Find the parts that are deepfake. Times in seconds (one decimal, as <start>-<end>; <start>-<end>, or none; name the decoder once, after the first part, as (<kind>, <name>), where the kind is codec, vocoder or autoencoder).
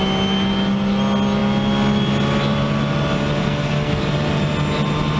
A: 3.4-4.0 (codec, SNAC)